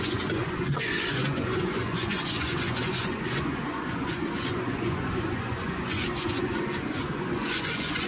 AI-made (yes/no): yes